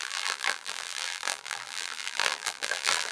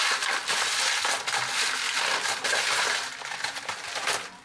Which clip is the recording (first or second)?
second